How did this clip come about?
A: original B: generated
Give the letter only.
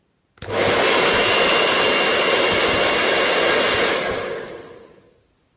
A